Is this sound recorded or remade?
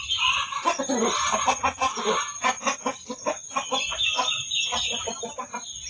recorded